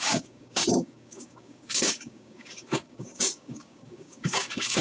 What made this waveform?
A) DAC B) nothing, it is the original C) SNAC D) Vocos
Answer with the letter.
A